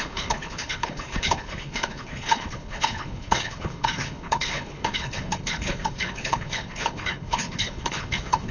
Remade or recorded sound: remade